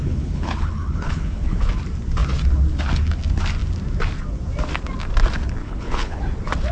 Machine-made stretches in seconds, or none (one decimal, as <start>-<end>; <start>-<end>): 0.0-1.7; 5.6-6.2